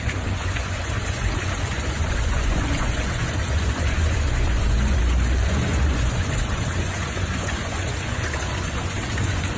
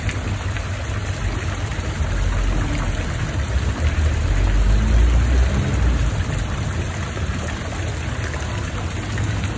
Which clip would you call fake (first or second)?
first